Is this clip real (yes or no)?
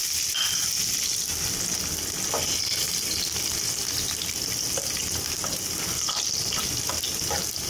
yes